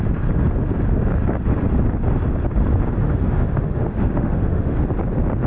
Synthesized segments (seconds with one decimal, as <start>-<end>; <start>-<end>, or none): 3.0-4.8